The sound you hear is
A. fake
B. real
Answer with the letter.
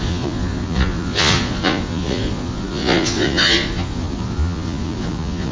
A